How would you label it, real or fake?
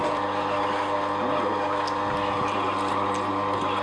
real